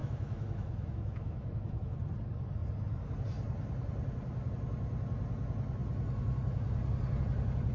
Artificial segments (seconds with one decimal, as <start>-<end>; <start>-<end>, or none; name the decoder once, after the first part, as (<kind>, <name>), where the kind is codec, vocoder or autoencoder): 0.0-1.8 (autoencoder, DAC-VAE)